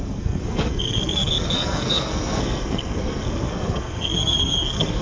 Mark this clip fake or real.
fake